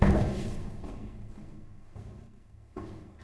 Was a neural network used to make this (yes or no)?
yes